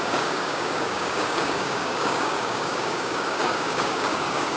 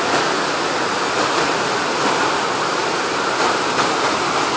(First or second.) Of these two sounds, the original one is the second